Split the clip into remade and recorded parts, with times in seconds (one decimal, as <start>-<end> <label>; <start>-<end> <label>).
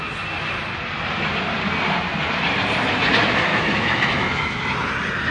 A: 0.0-3.5 recorded; 3.5-4.6 remade; 4.6-5.3 recorded